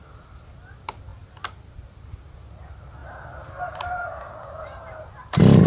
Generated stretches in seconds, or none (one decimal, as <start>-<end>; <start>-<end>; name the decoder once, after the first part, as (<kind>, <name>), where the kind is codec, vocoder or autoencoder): none